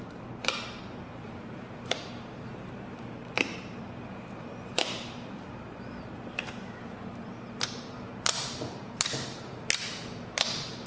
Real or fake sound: fake